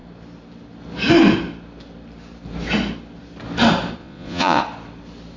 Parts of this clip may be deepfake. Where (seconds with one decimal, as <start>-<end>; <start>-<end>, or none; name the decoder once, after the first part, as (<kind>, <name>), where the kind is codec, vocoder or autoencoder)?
4.0-4.6 (vocoder, Vocos)